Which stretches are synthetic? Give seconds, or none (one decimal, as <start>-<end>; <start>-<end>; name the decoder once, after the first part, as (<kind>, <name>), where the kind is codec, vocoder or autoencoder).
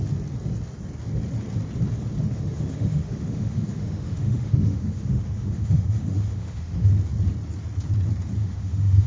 2.2-6.9 (autoencoder, DAC-VAE); 8.4-9.1